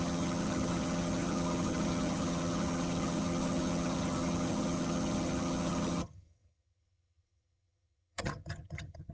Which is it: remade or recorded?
remade